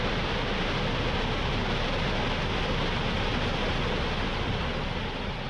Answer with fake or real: real